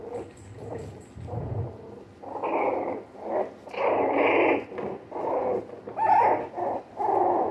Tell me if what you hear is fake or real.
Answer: real